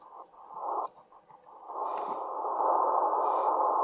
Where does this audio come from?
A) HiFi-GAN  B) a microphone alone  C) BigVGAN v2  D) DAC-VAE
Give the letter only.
B